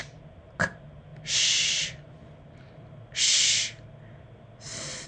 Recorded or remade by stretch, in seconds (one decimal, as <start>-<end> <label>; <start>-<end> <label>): 0.0-5.1 recorded